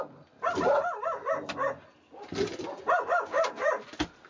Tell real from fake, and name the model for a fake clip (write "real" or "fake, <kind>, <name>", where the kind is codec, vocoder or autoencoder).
real